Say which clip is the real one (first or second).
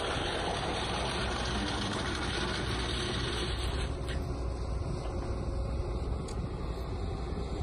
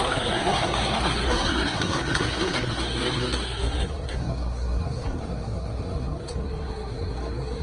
first